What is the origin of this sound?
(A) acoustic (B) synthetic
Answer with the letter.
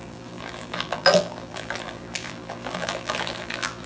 B